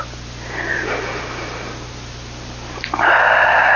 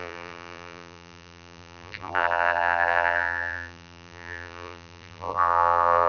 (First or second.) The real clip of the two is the first